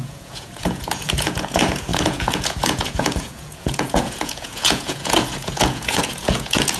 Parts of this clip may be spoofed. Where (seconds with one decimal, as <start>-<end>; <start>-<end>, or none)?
0.0-6.8